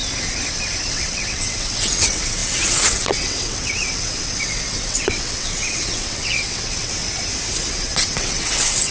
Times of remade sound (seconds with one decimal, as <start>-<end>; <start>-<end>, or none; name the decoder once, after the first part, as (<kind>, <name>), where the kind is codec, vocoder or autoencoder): 0.9-7.0 (vocoder, WaveNeXt); 7.5-8.9